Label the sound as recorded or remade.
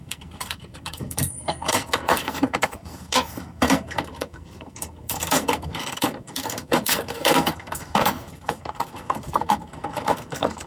remade